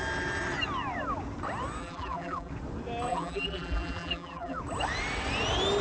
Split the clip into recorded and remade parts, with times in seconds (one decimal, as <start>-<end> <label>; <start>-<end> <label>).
0.0-1.8 recorded; 1.8-2.5 remade; 2.5-3.1 recorded; 3.1-4.6 remade; 4.6-5.8 recorded